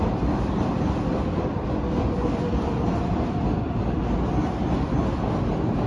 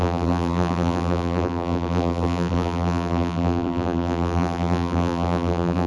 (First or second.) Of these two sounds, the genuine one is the first